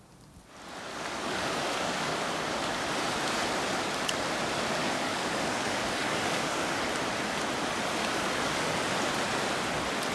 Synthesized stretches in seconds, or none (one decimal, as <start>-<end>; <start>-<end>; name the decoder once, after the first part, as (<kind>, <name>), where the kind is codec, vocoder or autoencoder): 0.9-2.8 (codec, DAC); 4.8-6.9; 8.0-8.8